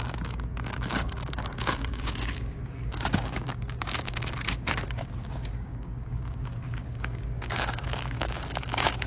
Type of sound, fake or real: fake